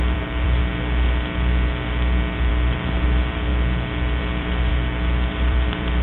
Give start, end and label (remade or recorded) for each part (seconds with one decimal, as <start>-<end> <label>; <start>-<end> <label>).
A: 0.0-0.6 remade; 0.6-2.5 recorded; 2.5-3.5 remade; 3.5-4.2 recorded; 4.2-4.7 remade; 4.7-5.3 recorded; 5.3-6.0 remade